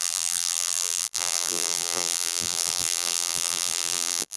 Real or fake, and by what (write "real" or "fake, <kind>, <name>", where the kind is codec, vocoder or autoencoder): fake, vocoder, BigVGAN v2